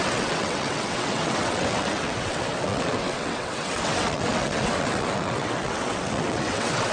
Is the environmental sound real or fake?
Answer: fake